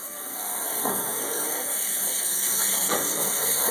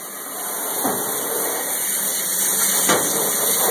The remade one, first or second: first